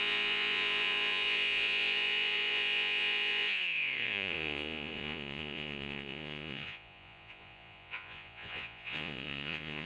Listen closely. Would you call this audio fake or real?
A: fake